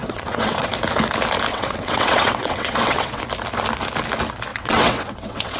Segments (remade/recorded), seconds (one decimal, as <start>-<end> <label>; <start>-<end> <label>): 0.0-0.7 remade; 0.7-1.5 recorded; 1.5-3.2 remade; 3.2-4.5 recorded; 4.5-5.6 remade